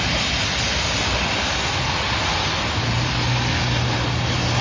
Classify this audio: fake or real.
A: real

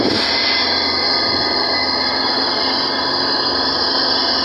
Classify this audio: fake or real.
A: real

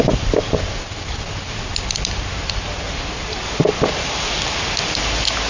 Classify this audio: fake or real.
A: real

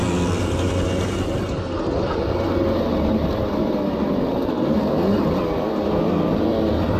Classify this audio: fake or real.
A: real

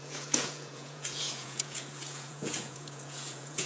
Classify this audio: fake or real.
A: fake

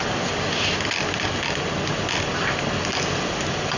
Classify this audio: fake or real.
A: real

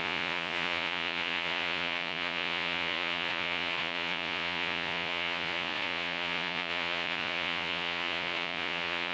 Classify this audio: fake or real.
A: fake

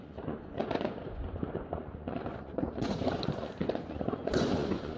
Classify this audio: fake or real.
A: fake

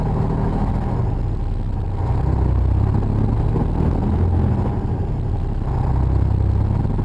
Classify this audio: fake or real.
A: real